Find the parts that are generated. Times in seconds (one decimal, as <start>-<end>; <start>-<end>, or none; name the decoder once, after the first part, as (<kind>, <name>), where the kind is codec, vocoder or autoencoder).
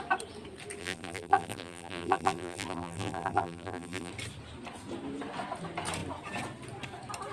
0.8-4.1 (vocoder, BigVGAN v2)